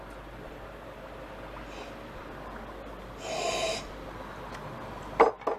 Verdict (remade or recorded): recorded